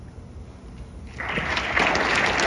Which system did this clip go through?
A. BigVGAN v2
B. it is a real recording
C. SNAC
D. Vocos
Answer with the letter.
B